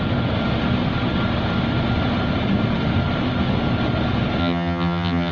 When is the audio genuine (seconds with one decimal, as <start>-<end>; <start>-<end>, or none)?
0.0-4.4